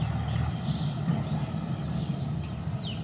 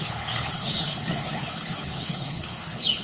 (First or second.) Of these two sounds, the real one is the first